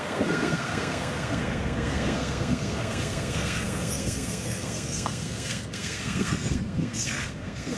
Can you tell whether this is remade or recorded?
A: remade